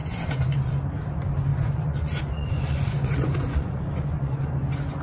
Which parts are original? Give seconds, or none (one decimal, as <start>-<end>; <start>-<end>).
0.7-1.5; 4.5-5.0